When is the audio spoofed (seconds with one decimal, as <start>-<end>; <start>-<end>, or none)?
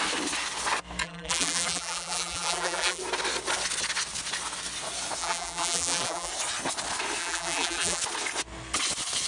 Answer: 1.0-3.0; 5.2-6.3; 7.2-8.0